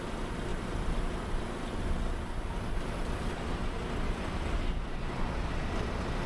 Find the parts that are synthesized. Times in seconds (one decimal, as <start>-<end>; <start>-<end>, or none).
none